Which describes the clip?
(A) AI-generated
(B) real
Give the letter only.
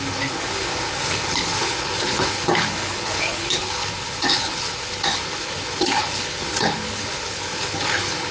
A